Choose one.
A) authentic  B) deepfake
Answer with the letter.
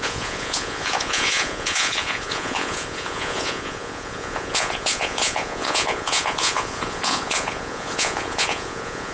B